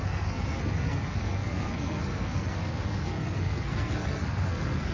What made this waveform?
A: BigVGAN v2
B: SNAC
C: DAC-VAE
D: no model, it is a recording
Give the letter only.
B